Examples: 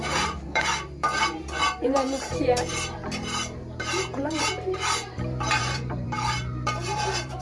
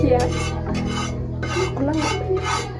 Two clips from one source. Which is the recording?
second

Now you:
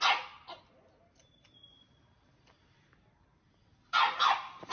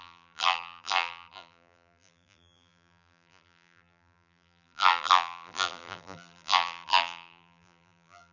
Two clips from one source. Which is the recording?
first